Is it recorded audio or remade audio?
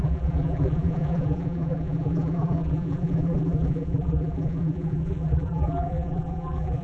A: remade